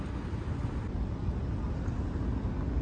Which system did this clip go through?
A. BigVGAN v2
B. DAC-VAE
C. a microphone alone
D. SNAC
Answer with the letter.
C